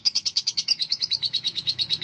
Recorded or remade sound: remade